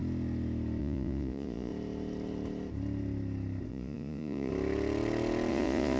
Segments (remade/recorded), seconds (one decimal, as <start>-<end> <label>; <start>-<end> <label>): 0.0-0.8 recorded; 0.8-1.7 remade; 1.7-3.7 recorded; 3.7-4.5 remade; 4.5-5.5 recorded; 5.5-6.0 remade